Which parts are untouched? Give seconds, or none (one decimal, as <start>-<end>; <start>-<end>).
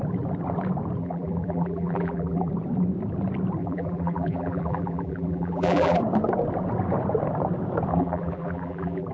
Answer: 0.0-1.0; 2.5-3.6; 6.0-7.9